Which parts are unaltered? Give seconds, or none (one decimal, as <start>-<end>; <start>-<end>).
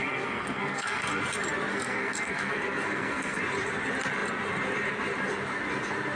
1.2-1.7; 3.4-6.2